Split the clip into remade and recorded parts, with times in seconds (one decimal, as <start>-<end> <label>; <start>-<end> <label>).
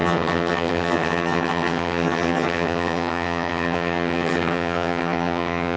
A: 0.0-5.8 remade